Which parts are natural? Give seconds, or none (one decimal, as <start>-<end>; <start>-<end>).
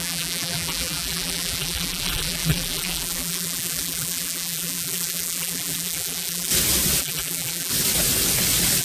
6.5-7.0; 7.7-8.8